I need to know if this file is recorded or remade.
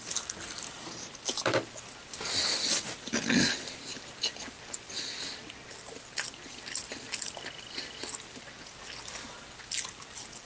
recorded